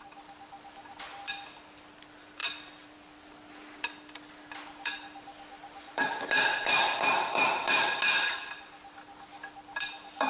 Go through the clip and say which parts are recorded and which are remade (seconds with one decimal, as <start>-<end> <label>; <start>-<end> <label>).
0.0-10.3 remade